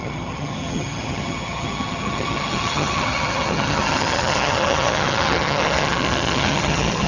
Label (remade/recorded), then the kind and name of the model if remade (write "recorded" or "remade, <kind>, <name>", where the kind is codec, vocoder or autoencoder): remade, vocoder, HiFi-GAN